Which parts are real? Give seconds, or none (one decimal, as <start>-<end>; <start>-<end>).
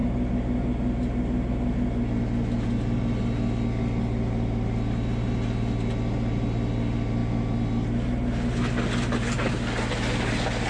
0.0-10.7